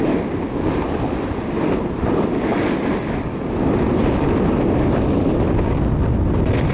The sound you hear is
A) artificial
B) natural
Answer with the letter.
B